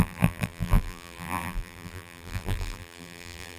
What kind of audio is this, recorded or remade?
remade